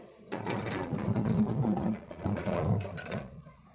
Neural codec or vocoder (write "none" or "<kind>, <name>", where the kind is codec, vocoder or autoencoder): vocoder, Vocos